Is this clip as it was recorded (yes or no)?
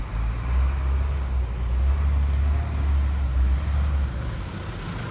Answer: yes